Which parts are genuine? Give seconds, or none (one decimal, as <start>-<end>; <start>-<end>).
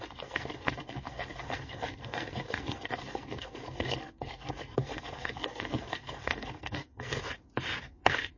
7.2-7.8